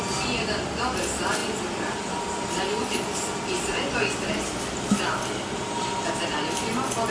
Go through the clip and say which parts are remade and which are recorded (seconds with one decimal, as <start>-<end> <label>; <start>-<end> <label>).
0.0-7.1 recorded